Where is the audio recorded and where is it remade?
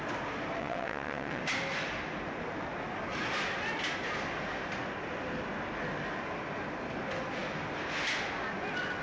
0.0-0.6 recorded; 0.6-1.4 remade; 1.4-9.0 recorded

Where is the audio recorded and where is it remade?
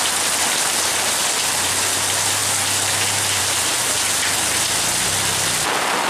0.0-6.1 recorded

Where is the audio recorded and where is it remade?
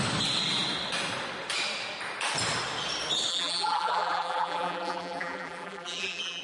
0.0-3.3 recorded; 3.3-6.4 remade